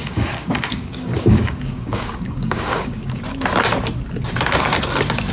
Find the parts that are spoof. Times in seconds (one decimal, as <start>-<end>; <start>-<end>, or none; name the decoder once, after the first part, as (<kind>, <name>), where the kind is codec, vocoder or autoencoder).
0.0-3.2 (codec, DAC)